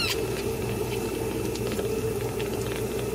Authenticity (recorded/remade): recorded